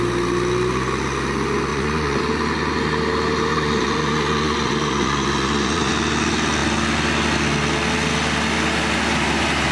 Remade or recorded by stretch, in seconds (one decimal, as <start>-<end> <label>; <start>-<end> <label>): 0.0-1.7 recorded; 1.7-2.2 remade; 2.2-3.5 recorded; 3.5-5.9 remade; 5.9-9.7 recorded